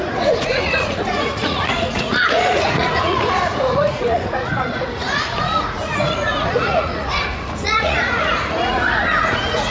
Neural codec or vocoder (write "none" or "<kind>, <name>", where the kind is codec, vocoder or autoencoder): vocoder, Vocos